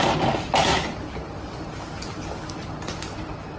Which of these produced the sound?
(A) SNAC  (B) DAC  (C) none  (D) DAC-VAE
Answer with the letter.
C